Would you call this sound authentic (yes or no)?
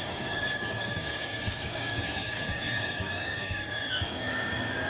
no